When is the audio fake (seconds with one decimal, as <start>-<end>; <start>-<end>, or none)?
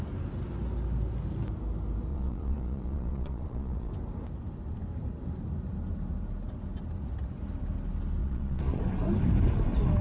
2.1-3.9; 8.2-8.8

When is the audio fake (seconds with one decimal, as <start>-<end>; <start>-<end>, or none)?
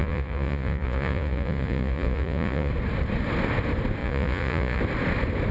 0.0-2.7; 4.0-4.8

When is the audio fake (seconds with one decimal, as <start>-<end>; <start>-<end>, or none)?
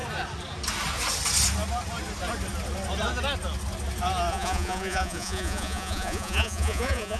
4.3-7.2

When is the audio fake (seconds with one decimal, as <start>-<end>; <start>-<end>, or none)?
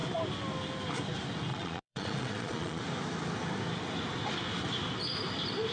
1.5-2.8